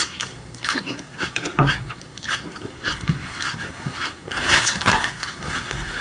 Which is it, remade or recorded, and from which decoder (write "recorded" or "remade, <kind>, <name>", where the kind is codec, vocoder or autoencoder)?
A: remade, codec, SNAC